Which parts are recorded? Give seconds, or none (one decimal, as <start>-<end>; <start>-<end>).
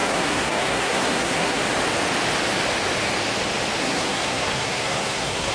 1.6-3.8